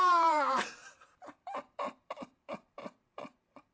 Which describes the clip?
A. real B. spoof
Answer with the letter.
B